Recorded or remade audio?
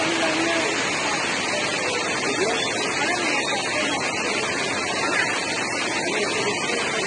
recorded